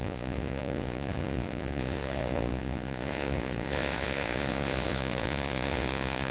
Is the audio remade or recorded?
remade